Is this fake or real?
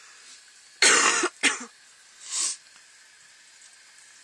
real